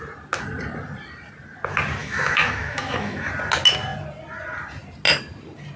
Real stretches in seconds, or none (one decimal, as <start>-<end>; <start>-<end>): 0.0-2.0; 3.3-5.8